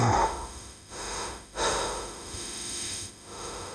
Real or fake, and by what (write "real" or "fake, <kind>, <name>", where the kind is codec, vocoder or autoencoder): fake, autoencoder, DAC-VAE